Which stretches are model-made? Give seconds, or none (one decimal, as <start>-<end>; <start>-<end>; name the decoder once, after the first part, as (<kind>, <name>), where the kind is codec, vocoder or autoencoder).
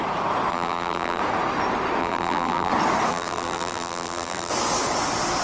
0.5-1.2 (vocoder, BigVGAN v2); 2.0-2.7; 3.1-4.5